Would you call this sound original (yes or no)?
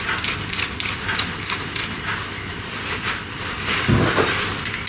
yes